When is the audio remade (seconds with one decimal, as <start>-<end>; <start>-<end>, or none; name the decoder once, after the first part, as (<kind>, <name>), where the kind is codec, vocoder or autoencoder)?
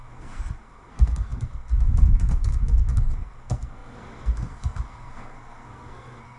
0.0-6.4 (codec, SNAC)